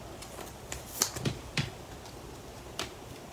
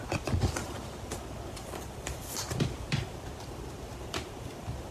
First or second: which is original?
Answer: first